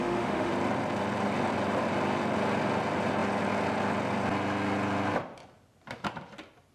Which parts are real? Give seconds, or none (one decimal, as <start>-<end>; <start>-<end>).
0.5-6.7